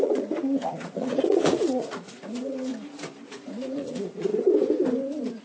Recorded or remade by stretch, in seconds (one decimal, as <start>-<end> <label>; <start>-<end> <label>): 0.0-2.7 remade; 2.7-3.3 recorded; 3.3-4.3 remade; 4.3-5.4 recorded